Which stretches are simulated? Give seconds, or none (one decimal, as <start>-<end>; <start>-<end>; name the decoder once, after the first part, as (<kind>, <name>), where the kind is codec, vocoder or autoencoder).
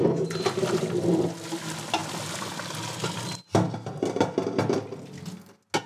none